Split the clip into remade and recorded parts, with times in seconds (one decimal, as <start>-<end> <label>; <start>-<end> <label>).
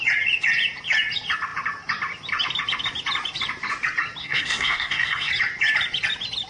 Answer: 0.0-4.2 recorded; 4.2-5.3 remade; 5.3-6.5 recorded